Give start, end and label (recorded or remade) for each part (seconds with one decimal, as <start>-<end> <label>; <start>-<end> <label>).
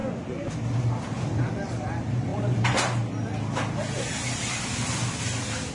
0.0-1.0 recorded; 1.0-2.3 remade; 2.3-5.7 recorded